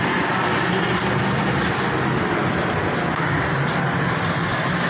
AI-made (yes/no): no